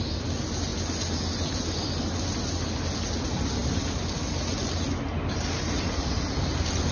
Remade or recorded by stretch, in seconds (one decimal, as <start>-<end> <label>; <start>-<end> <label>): 0.0-6.9 recorded